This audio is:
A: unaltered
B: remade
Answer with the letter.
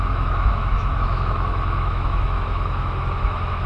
B